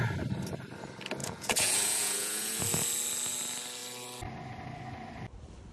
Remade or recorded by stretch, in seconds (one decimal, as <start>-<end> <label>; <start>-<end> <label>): 0.0-1.2 recorded; 1.2-2.6 remade; 2.6-5.7 recorded

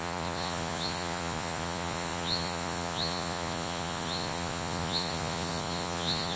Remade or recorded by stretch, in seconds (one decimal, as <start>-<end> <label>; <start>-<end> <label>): 0.0-6.4 remade

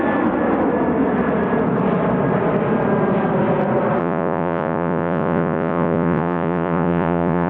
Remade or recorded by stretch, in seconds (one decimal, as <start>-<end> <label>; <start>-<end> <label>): 0.0-4.0 recorded; 4.0-7.5 remade

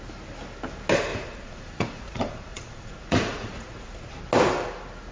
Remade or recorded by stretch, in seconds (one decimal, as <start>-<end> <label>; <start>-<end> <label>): 0.0-1.1 recorded; 1.1-4.2 remade; 4.2-5.1 recorded

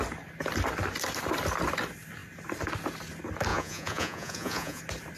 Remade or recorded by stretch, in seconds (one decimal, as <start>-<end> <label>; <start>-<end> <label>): 0.0-3.5 recorded; 3.5-4.8 remade; 4.8-5.2 recorded

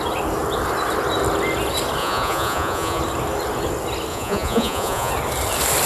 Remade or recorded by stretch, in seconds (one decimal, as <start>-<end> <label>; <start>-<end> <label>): 0.0-2.0 recorded; 2.0-3.0 remade; 3.0-4.1 recorded; 4.1-5.1 remade; 5.1-5.9 recorded